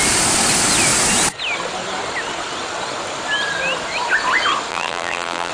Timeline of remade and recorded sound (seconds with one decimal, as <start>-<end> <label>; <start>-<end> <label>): 0.0-4.7 recorded; 4.7-5.5 remade